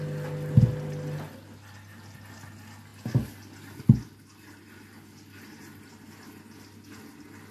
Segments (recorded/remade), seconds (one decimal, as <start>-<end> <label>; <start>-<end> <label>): 0.0-7.5 recorded